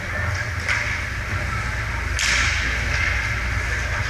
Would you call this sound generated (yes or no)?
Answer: no